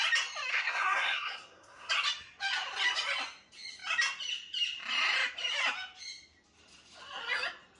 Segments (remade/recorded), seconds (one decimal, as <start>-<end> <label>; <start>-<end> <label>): 0.0-0.5 recorded; 0.5-1.9 remade; 1.9-7.8 recorded

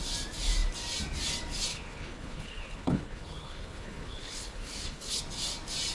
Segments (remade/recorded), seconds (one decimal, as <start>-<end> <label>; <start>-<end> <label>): 0.0-1.7 recorded; 1.7-5.2 remade; 5.2-5.9 recorded

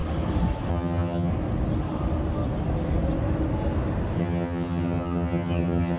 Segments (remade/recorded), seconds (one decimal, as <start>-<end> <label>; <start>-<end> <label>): 0.0-0.7 recorded; 0.7-1.3 remade; 1.3-4.2 recorded; 4.2-6.0 remade

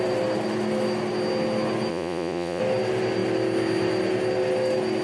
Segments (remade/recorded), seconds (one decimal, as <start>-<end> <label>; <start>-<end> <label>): 0.0-1.9 recorded; 1.9-2.6 remade; 2.6-5.0 recorded

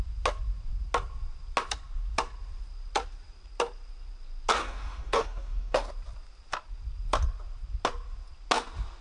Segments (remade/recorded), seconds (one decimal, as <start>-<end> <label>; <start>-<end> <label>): 0.0-4.6 recorded; 4.6-5.9 remade; 5.9-9.0 recorded

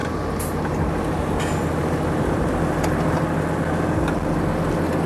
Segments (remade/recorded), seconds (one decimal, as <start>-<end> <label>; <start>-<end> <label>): 0.0-5.1 recorded

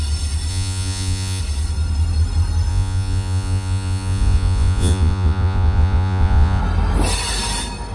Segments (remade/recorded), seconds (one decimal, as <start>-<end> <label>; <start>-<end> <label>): 0.0-0.5 recorded; 0.5-1.4 remade; 1.4-2.7 recorded; 2.7-6.6 remade; 6.6-7.9 recorded

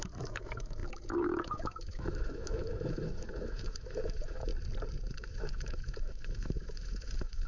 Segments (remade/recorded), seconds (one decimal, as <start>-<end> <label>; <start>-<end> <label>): 0.0-4.5 remade; 4.5-5.1 recorded; 5.1-7.5 remade